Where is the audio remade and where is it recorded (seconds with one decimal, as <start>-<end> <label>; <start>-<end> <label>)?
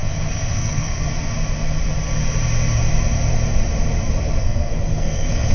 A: 0.0-1.1 remade; 1.1-4.4 recorded; 4.4-5.5 remade